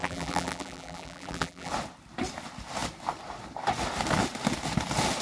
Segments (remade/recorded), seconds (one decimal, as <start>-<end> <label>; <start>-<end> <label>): 0.0-1.7 remade; 1.7-5.2 recorded